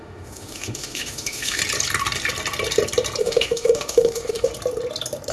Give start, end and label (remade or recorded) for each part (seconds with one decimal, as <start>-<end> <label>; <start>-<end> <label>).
0.0-1.6 remade; 1.6-3.2 recorded; 3.2-4.5 remade; 4.5-5.3 recorded